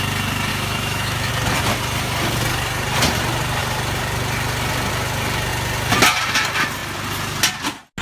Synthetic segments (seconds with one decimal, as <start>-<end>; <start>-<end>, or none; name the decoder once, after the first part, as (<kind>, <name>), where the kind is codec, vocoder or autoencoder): 0.5-1.3 (autoencoder, DAC-VAE)